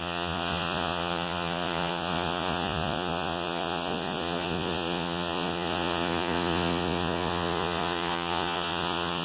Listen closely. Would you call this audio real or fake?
fake